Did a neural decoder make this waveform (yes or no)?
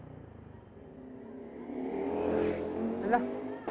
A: no